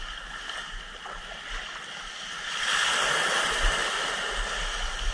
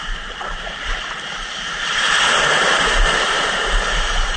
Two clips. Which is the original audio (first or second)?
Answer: first